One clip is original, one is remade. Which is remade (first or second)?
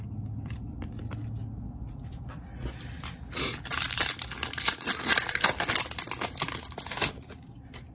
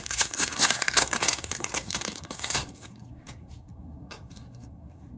second